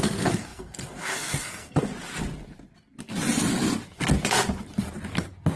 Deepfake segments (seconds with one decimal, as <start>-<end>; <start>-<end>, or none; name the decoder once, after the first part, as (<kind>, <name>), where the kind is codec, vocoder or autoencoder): 0.0-1.9 (codec, SNAC)